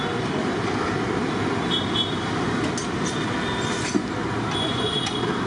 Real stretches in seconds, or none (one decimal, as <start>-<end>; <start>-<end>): 0.0-4.6; 5.1-5.5